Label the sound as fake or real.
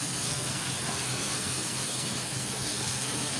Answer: fake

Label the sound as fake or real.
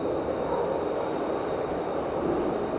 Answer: real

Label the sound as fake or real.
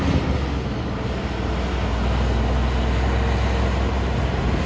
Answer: real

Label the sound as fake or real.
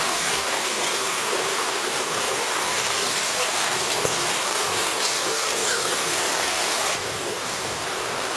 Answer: fake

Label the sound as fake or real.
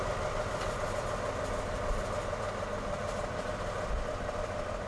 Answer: real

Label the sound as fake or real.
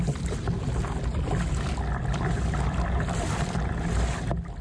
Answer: real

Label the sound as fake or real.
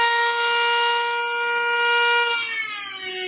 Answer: real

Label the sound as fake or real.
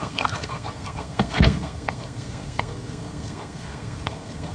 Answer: fake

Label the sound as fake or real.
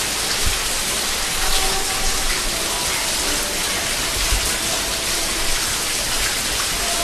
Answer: real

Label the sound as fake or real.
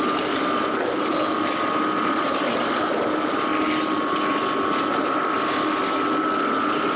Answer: real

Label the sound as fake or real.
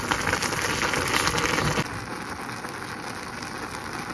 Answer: real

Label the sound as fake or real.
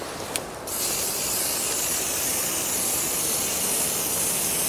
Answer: real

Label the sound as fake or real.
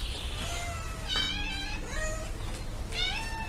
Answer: real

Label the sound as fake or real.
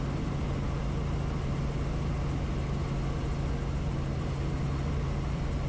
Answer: real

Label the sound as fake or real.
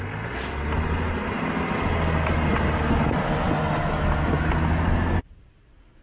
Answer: real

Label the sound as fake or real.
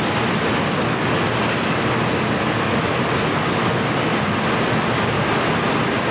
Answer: real